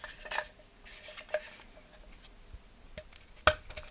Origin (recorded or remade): recorded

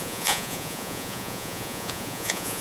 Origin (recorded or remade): remade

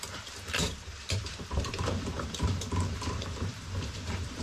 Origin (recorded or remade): remade